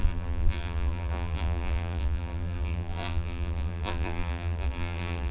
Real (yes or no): no